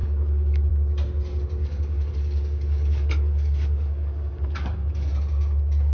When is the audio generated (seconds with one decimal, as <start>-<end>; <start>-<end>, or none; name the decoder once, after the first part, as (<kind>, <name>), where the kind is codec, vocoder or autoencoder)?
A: 0.0-0.7 (codec, DAC); 1.6-5.1